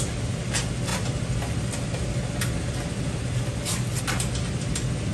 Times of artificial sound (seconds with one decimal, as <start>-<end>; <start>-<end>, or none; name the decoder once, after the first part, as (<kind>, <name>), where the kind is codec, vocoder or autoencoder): none

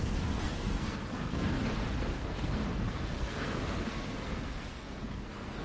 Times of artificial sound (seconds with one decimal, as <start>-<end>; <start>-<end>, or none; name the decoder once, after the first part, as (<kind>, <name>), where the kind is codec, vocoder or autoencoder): 0.0-5.6 (codec, SNAC)

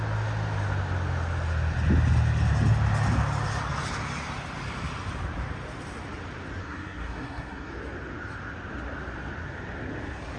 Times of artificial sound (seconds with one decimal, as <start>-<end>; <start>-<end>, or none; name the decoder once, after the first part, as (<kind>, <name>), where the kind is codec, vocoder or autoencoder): 6.6-7.7 (codec, SNAC)

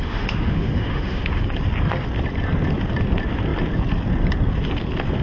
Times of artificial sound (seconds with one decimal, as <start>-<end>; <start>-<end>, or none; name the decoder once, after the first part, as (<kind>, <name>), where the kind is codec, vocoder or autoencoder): 0.0-1.4 (autoencoder, DAC-VAE)

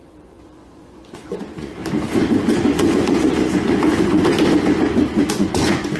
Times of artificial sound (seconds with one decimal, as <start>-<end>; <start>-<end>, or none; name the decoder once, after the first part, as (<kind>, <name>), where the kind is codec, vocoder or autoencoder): 0.0-1.8 (vocoder, Vocos); 2.3-4.3; 4.9-6.0

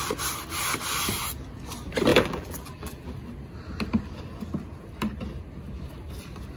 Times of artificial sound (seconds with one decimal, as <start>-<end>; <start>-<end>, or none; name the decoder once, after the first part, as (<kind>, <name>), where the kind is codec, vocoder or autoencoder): 2.1-3.1 (vocoder, BigVGAN v2)